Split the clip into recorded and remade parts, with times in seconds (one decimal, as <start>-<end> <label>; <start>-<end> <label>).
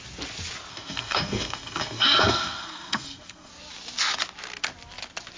0.0-0.7 recorded; 0.7-3.5 remade; 3.5-5.4 recorded